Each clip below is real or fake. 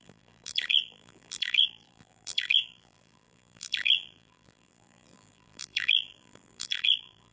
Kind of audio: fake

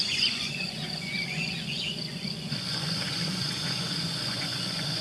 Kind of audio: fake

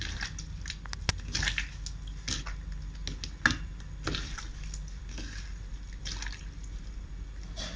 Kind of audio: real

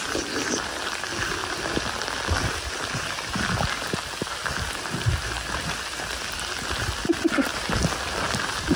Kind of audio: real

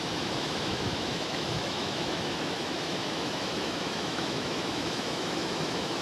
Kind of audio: fake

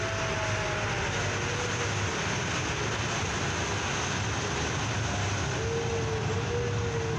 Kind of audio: real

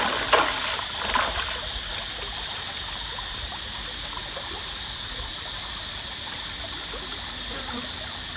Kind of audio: real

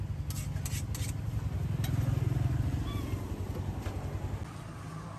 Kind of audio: real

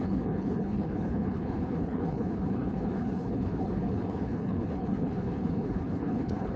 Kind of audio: fake